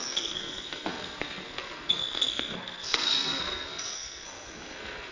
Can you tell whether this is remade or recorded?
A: remade